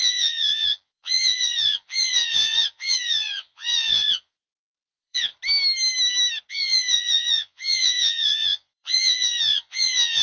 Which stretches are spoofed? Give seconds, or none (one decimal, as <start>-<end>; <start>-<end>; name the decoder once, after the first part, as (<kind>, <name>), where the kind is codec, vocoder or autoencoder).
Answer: 0.0-5.3 (vocoder, Vocos); 6.5-10.2